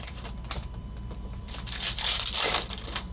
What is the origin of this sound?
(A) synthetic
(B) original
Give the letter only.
A